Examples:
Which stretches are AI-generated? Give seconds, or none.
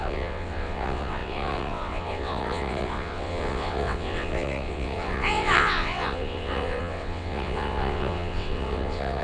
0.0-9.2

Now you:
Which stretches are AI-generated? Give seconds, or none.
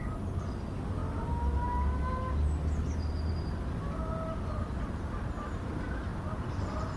none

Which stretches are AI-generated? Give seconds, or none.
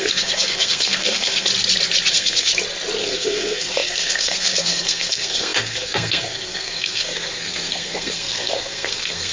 0.0-1.5; 2.1-2.5; 3.0-9.3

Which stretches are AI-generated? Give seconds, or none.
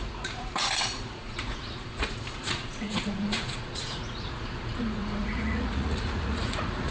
0.0-6.9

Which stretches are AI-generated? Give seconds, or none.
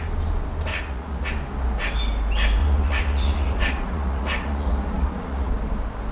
0.7-1.3; 2.6-5.5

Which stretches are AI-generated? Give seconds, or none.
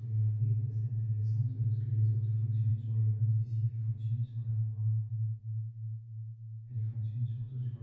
none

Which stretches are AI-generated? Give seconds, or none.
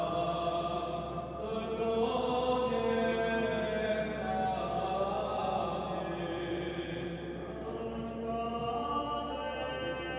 1.5-2.2; 5.4-7.1; 8.6-9.3